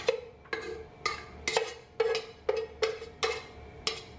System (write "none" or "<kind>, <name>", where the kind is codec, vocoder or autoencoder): none